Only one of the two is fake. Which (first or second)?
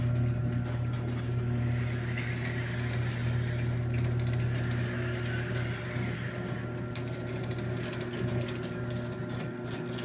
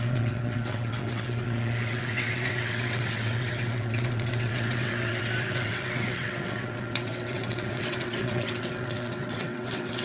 second